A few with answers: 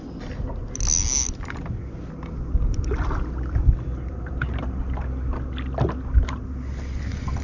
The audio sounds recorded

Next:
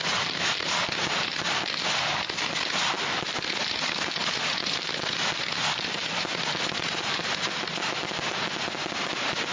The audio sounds recorded